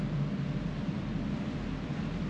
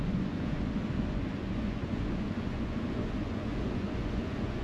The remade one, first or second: second